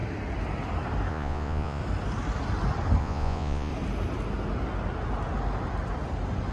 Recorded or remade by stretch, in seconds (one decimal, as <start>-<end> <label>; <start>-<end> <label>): 0.0-1.1 recorded; 1.1-1.8 remade; 1.8-3.0 recorded; 3.0-3.7 remade; 3.7-6.5 recorded